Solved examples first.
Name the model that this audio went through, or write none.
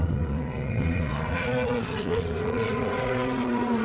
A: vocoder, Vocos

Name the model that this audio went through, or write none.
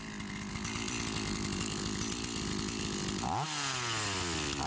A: none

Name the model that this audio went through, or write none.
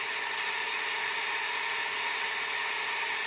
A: none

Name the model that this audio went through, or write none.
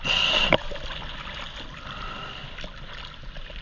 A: none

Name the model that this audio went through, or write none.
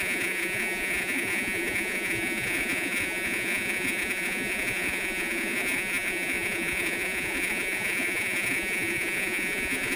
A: vocoder, Vocos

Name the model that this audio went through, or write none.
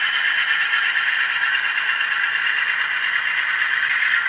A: none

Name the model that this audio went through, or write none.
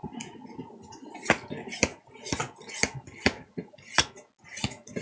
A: none